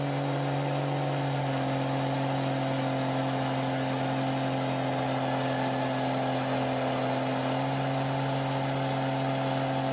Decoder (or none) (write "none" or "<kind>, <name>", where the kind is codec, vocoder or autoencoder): none